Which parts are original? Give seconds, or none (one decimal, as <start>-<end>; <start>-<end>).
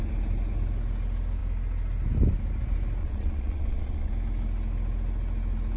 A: 0.0-3.0; 4.1-5.8